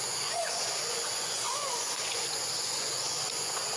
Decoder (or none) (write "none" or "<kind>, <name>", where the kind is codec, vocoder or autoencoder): vocoder, Vocos